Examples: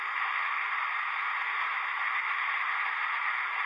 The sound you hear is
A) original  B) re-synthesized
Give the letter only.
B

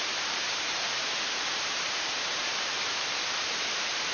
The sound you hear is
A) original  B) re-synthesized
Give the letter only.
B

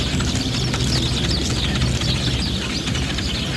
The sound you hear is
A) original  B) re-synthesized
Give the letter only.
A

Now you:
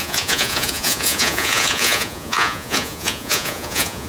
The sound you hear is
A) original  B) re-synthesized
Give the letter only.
B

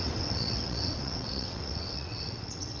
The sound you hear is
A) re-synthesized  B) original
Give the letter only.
A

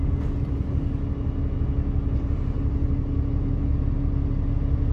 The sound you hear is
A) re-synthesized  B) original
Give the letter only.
B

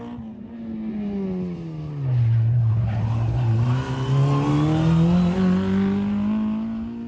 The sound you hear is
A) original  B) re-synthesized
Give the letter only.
A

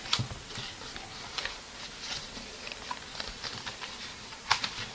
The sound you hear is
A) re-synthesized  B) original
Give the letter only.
B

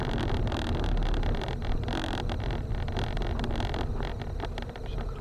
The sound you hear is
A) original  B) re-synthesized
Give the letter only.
A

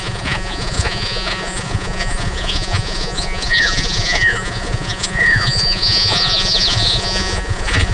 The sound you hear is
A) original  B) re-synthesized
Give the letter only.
B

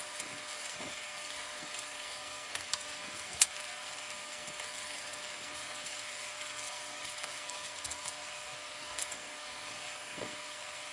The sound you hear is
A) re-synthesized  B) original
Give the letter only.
A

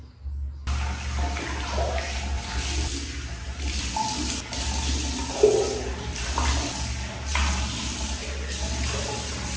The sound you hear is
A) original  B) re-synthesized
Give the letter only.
A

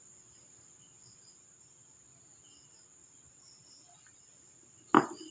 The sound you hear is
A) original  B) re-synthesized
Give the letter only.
A